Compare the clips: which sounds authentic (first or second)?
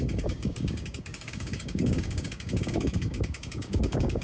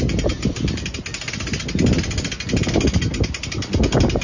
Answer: second